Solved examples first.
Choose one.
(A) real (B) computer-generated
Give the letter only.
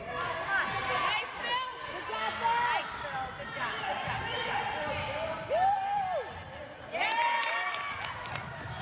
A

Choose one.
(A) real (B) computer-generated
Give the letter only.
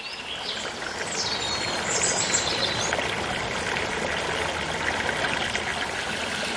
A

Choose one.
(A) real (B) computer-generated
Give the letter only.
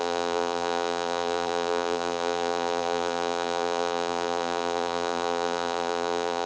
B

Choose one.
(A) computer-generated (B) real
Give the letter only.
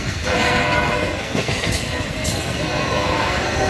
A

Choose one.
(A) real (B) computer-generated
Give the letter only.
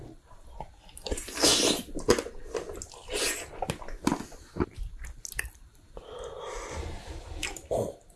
A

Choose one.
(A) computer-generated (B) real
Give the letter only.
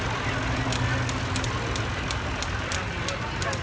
B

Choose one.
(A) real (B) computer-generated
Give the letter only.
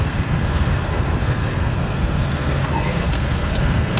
B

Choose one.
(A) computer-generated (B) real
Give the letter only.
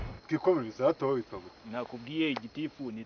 B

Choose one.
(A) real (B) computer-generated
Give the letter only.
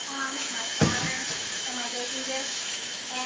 B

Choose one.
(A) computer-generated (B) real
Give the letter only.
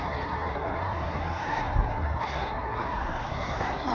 A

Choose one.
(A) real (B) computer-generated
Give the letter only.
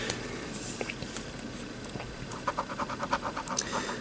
A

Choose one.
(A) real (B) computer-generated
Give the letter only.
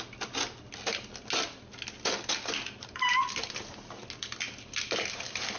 A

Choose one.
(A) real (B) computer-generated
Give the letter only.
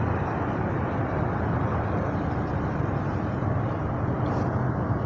A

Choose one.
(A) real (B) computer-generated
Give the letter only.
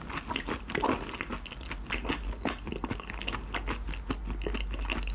A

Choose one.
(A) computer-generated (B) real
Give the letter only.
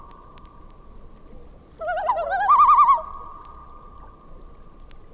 B